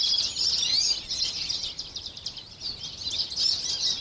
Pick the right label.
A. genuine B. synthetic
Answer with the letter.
A